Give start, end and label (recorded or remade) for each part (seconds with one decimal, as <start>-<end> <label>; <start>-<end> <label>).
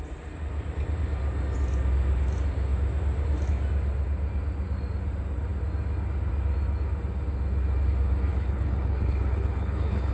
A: 0.0-8.3 recorded; 8.3-10.1 remade